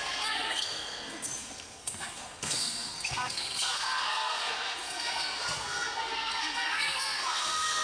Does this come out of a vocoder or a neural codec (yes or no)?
yes